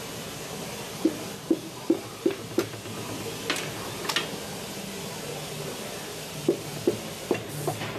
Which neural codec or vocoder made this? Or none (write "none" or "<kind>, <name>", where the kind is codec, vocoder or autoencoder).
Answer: none